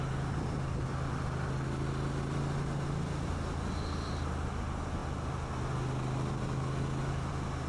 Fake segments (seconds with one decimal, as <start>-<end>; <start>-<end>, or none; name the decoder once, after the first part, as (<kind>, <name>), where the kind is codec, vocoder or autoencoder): none